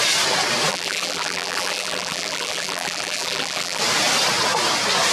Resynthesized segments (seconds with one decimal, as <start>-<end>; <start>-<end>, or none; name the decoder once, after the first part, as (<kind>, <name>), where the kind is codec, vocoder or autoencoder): 0.7-3.8 (vocoder, BigVGAN v2)